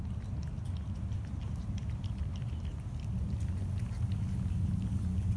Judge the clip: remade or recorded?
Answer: recorded